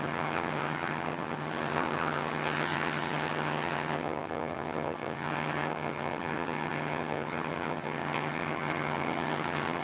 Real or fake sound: fake